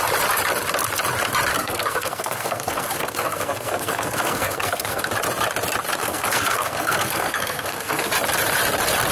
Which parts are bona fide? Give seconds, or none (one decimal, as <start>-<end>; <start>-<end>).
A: 0.0-1.5; 5.1-6.0; 8.1-9.1